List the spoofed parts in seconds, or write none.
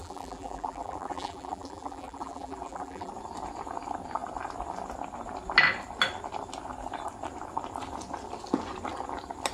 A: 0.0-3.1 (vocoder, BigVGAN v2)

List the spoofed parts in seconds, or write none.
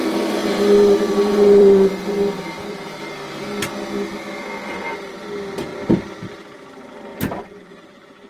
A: 0.4-3.0 (vocoder, BigVGAN v2); 5.7-6.3; 7.1-8.3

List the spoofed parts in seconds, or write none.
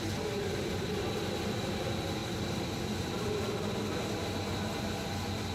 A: none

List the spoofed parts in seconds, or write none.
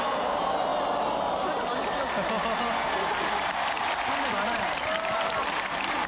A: 0.0-0.7 (vocoder, BigVGAN v2); 4.3-6.1